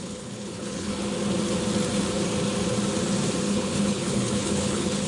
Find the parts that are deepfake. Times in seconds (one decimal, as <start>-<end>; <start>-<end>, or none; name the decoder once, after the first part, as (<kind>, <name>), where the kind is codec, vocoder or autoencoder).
0.0-0.9 (codec, HILCodec); 3.4-5.1